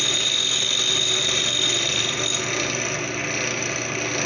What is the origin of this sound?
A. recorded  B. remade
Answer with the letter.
A